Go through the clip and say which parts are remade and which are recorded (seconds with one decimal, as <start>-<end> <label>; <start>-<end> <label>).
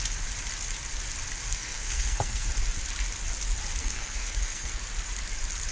0.0-1.5 recorded; 1.5-2.5 remade; 2.5-3.8 recorded; 3.8-4.8 remade; 4.8-5.7 recorded